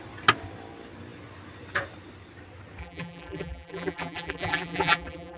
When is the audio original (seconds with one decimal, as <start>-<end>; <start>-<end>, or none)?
0.0-2.8